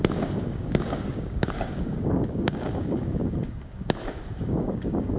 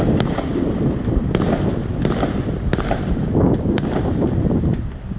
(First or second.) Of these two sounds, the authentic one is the second